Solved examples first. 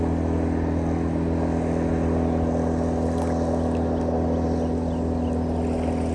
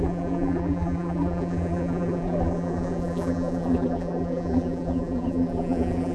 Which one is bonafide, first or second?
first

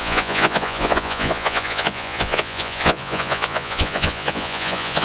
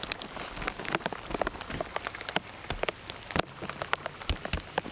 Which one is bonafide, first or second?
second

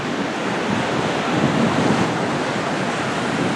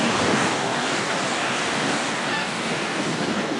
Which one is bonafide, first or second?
first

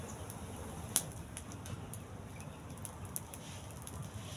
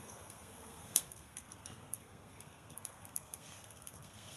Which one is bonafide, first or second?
first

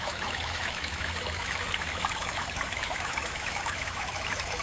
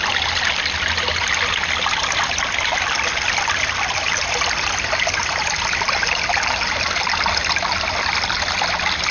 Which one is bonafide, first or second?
second